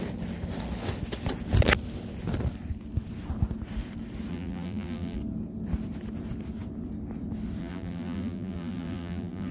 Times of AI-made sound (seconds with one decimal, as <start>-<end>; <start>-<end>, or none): 4.3-5.2; 7.6-9.5